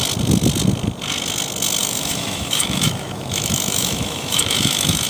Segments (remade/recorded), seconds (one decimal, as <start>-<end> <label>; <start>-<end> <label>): 0.0-1.8 recorded; 1.8-5.1 remade